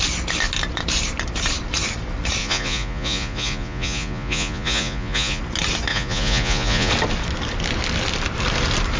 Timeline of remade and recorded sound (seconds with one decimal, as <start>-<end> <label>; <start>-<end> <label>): 0.0-2.4 recorded; 2.4-5.4 remade; 5.4-5.9 recorded; 5.9-6.9 remade; 6.9-9.0 recorded